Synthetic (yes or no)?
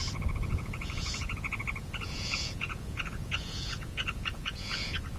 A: yes